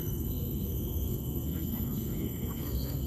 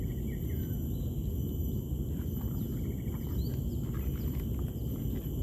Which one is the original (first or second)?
second